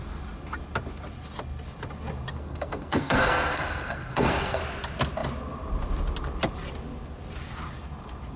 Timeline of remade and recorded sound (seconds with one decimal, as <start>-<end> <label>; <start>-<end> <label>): 0.0-2.3 recorded; 2.3-4.6 remade; 4.6-8.4 recorded